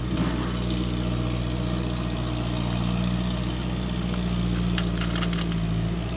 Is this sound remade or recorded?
recorded